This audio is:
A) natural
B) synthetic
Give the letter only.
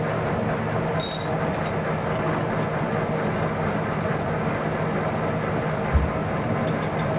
A